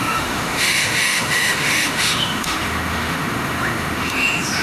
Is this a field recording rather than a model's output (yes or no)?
no